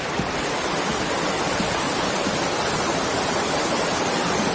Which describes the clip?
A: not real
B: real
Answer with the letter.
B